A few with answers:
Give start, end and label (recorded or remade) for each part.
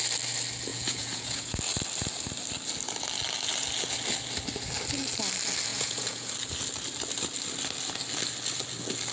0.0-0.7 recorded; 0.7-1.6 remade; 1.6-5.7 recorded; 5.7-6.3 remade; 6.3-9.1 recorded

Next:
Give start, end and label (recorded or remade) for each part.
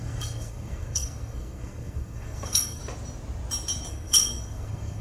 0.0-2.8 remade; 2.8-3.9 recorded; 3.9-5.0 remade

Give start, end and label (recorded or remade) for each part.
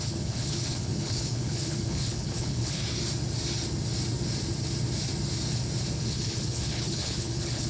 0.0-2.8 remade; 2.8-6.0 recorded; 6.0-7.7 remade